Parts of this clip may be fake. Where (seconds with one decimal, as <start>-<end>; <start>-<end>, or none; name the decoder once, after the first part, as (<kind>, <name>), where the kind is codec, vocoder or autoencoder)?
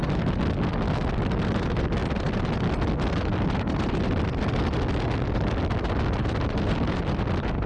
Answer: none